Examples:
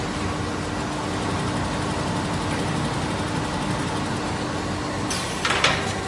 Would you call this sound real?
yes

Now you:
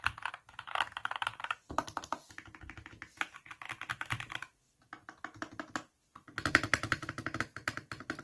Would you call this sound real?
yes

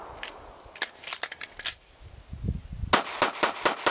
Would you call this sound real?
yes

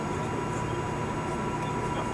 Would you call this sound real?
yes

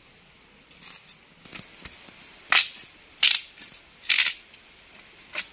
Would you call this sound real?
yes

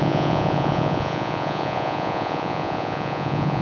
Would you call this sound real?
no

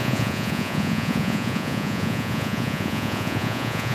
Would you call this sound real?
no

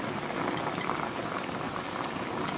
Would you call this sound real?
yes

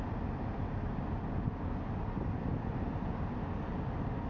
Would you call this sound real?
yes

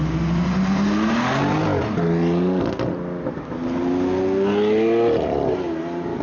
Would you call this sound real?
yes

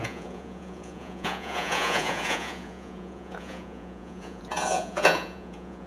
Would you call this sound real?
no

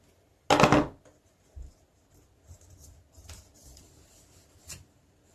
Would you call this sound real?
yes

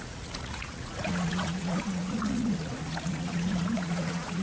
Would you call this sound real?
no